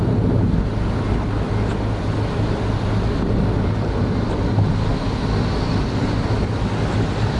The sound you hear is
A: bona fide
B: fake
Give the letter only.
A